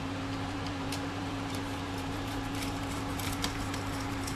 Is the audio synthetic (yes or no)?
yes